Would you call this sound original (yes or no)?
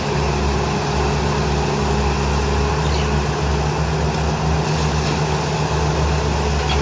yes